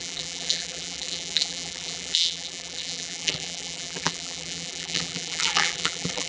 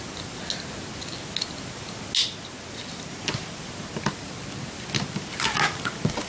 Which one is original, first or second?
second